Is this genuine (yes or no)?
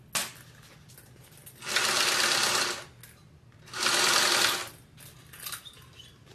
yes